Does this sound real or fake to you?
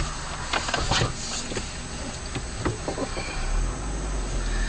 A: real